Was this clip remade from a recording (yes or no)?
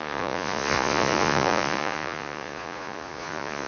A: yes